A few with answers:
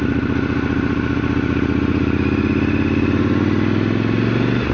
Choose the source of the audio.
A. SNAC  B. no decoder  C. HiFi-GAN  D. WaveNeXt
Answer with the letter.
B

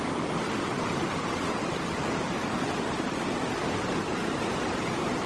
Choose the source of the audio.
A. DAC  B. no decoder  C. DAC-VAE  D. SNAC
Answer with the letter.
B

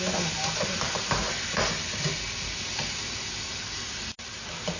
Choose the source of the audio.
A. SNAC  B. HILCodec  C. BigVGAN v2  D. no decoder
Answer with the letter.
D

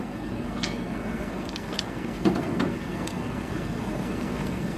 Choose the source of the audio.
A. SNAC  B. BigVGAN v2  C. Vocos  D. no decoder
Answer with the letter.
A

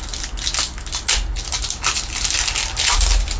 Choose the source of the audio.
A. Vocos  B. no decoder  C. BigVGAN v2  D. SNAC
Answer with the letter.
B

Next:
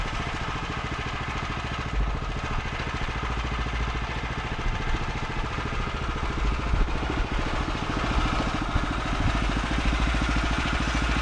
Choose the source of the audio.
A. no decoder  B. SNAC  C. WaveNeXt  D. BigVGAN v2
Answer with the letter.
A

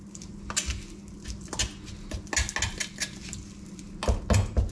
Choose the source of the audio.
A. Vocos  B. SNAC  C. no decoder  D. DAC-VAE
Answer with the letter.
C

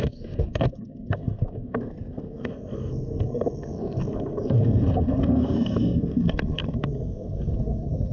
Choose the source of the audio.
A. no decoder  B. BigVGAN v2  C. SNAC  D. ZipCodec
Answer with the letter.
C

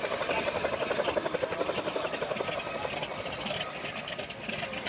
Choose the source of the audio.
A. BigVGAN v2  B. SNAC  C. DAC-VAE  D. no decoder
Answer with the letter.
D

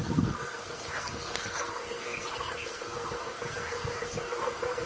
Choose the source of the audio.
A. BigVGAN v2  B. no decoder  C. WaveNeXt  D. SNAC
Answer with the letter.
D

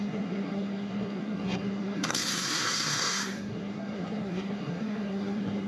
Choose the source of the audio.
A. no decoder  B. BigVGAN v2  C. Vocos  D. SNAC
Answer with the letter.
D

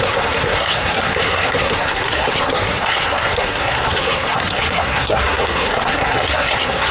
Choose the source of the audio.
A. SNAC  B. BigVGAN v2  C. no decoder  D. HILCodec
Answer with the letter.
A